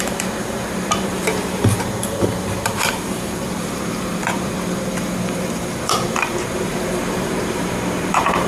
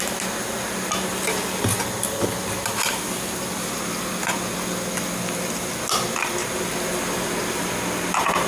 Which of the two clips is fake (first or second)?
first